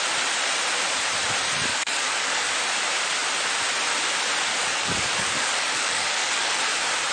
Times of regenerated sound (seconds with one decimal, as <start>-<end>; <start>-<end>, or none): 1.7-2.5; 4.5-6.6

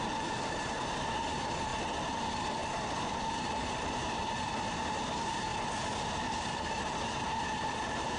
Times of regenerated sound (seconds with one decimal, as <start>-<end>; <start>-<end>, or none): 0.0-1.7; 2.2-5.5; 6.1-8.2

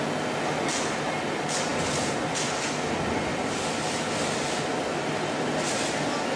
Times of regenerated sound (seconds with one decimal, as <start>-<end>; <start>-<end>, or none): 1.7-2.3; 3.3-5.3

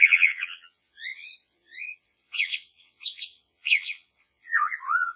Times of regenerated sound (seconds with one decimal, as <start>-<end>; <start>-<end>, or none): 0.0-5.2

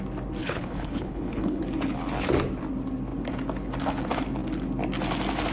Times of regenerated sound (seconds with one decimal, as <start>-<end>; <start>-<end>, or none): 0.4-1.6

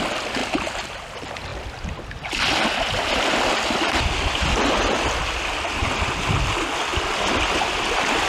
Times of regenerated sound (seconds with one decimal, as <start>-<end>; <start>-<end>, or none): none

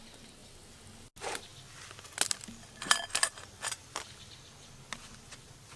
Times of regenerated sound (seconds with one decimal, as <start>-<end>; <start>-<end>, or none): none

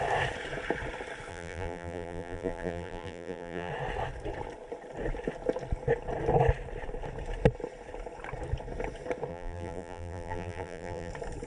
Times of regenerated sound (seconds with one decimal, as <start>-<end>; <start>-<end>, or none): 1.3-3.7; 9.3-11.1